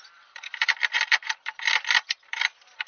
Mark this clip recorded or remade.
remade